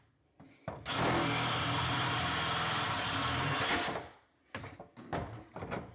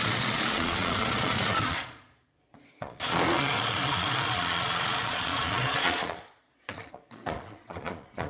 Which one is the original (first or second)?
first